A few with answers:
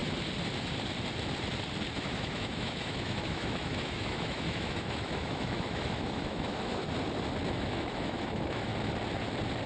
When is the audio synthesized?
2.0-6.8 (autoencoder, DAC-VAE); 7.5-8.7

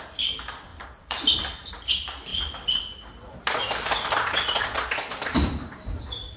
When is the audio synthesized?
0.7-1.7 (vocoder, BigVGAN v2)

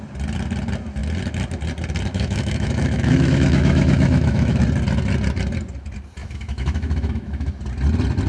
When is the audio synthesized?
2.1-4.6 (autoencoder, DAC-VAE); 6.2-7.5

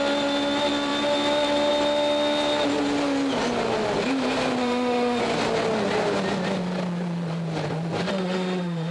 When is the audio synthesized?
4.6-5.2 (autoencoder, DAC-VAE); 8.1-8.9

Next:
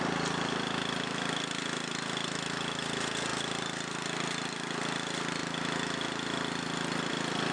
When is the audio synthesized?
none

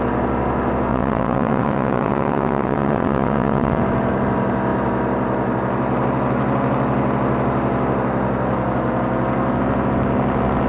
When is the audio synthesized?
0.9-3.8 (vocoder, WaveNeXt)

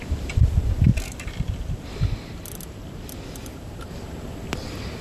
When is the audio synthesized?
none

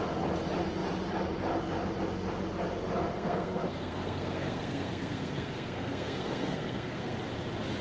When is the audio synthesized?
3.1-7.2 (codec, SNAC)